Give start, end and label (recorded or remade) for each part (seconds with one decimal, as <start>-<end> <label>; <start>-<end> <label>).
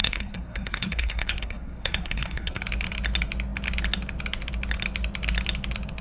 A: 0.0-2.6 remade; 2.6-6.0 recorded